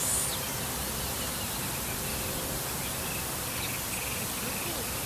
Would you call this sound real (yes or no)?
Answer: yes